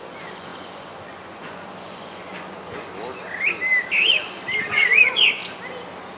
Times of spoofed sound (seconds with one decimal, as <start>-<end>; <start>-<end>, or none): 0.0-2.9; 4.7-5.4